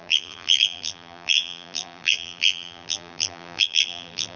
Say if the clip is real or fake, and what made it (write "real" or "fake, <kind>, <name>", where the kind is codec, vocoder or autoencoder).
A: fake, vocoder, BigVGAN v2